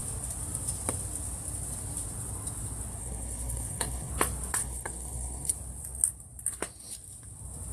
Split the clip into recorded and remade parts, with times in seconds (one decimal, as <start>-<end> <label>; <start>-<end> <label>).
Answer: 0.0-3.0 recorded; 3.0-4.1 remade; 4.1-4.6 recorded; 4.6-5.5 remade; 5.5-7.7 recorded